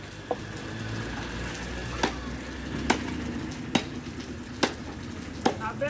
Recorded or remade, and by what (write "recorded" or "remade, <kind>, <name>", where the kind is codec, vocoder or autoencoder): recorded